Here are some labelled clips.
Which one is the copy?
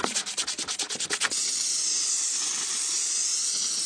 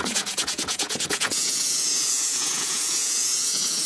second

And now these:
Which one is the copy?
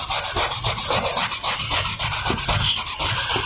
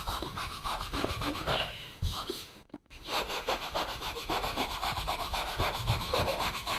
second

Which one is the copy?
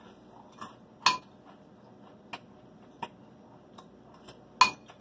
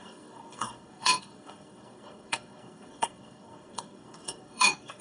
second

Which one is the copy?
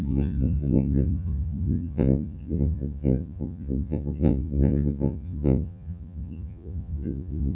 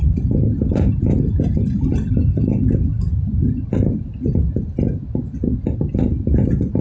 first